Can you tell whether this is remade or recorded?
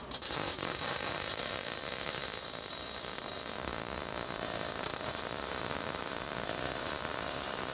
remade